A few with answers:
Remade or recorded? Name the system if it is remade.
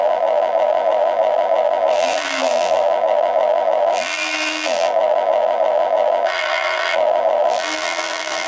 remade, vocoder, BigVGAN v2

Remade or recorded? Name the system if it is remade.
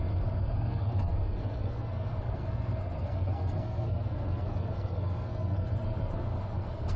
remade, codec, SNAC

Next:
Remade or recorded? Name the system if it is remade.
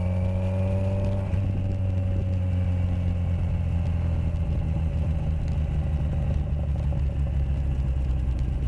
recorded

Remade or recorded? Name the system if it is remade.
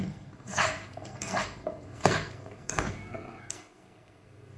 remade, codec, SNAC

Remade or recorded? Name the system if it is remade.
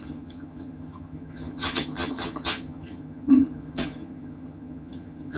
remade, vocoder, HiFi-GAN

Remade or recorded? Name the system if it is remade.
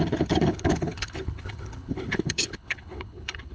remade, codec, HILCodec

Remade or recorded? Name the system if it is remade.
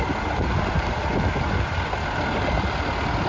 recorded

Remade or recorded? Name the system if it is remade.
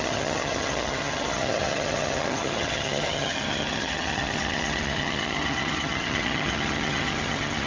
remade, vocoder, HiFi-GAN